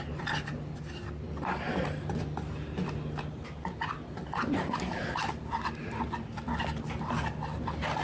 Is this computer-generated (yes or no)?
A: no